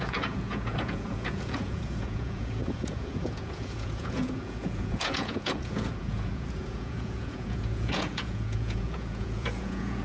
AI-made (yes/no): yes